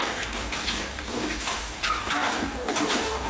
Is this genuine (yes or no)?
no